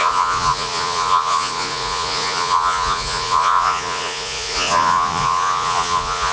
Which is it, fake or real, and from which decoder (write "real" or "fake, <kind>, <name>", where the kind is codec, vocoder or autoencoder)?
fake, vocoder, Vocos